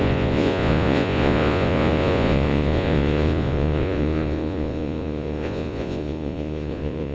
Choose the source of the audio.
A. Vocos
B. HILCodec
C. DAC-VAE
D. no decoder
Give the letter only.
A